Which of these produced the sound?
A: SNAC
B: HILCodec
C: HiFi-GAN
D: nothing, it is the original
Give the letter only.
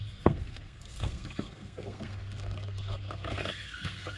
A